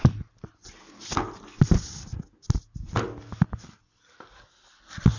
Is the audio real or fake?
real